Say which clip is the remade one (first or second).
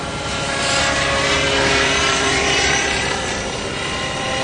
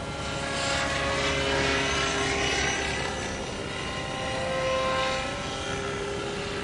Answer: first